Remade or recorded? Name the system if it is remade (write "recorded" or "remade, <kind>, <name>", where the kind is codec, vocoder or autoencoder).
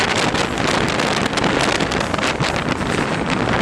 recorded